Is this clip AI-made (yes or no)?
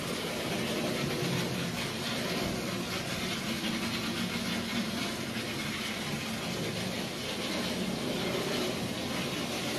no